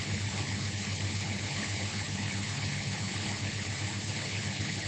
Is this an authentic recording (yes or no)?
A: no